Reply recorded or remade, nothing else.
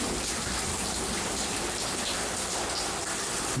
recorded